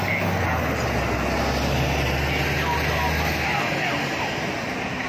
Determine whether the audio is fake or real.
real